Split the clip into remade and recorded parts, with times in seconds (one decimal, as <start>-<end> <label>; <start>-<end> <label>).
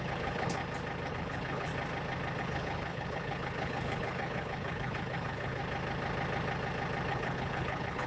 0.0-0.6 remade; 0.6-1.1 recorded; 1.1-1.7 remade; 1.7-2.4 recorded; 2.4-5.6 remade; 5.6-7.1 recorded; 7.1-8.1 remade